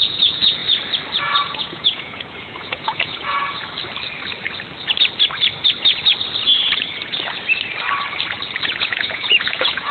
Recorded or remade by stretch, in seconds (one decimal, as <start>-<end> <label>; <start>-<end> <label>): 0.0-0.6 remade; 0.6-1.2 recorded; 1.2-3.6 remade; 3.6-8.8 recorded; 8.8-9.9 remade